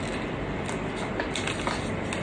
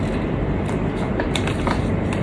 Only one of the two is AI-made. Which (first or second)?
second